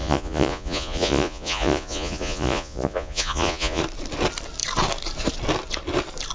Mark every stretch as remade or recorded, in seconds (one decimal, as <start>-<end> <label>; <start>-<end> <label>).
0.0-3.8 remade; 3.8-6.3 recorded

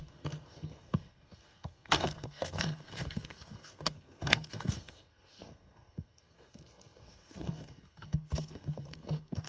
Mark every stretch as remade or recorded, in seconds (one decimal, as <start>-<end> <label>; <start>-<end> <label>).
0.0-9.5 remade

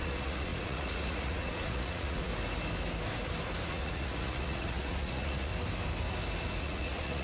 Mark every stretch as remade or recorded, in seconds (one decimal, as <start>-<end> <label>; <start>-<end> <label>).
0.0-2.3 remade; 2.3-3.7 recorded; 3.7-5.5 remade; 5.5-6.6 recorded; 6.6-7.2 remade

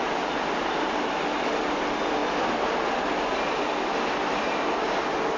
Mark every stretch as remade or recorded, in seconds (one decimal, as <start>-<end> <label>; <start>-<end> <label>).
0.0-5.4 recorded

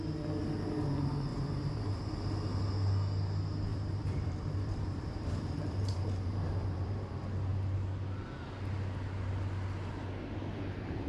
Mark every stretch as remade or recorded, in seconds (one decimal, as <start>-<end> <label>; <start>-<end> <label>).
0.0-1.3 recorded; 1.3-2.0 remade; 2.0-3.7 recorded; 3.7-7.1 remade; 7.1-11.1 recorded

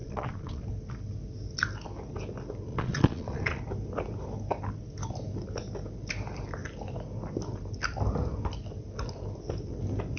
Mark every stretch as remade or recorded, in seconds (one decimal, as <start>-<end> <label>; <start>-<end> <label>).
0.0-0.6 remade; 0.6-2.7 recorded; 2.7-3.6 remade; 3.6-10.2 recorded

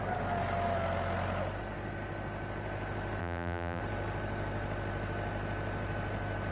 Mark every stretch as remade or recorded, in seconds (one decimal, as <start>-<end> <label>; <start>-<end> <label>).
0.0-3.2 recorded; 3.2-3.8 remade; 3.8-6.5 recorded